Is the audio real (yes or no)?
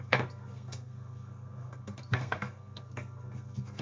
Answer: no